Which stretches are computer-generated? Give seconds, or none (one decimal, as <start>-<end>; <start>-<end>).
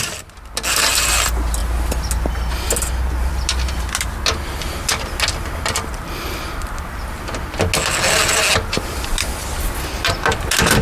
none